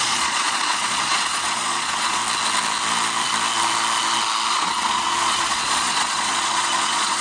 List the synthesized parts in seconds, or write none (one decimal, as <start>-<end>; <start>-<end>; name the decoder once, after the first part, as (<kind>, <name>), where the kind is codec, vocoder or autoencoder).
0.0-2.2 (vocoder, Vocos); 4.5-7.2